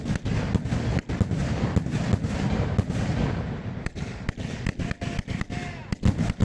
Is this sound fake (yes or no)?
no